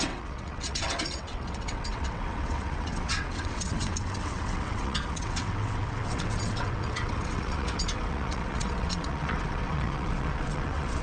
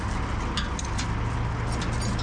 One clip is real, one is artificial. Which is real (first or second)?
second